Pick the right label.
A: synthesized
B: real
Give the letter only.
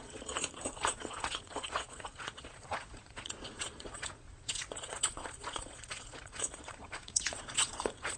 A